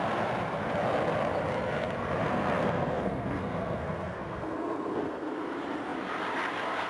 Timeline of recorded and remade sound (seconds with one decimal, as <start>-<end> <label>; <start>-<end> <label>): 0.0-2.2 recorded; 2.2-5.3 remade; 5.3-6.9 recorded